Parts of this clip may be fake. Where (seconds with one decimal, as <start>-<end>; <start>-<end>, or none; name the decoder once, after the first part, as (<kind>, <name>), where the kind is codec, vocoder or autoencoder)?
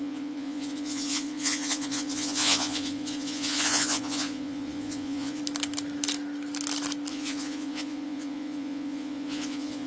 0.0-5.4 (vocoder, Vocos); 7.1-9.9